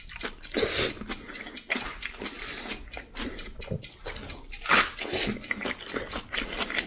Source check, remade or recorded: recorded